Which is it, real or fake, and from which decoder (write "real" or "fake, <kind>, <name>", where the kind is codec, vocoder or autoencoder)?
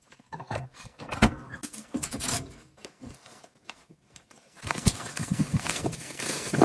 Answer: fake, codec, SNAC